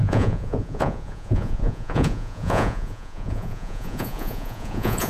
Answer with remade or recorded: remade